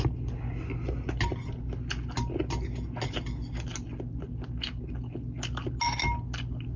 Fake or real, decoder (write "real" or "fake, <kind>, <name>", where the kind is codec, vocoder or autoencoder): real